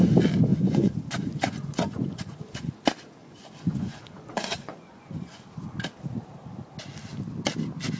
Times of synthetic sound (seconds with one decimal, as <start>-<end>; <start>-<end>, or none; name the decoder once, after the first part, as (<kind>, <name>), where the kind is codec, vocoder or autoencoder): 0.5-2.7 (vocoder, Vocos); 3.2-5.4